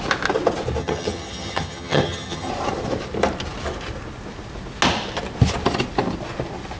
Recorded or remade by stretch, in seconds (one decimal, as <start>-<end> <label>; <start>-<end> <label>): 0.0-0.8 recorded; 0.8-2.5 remade; 2.5-6.8 recorded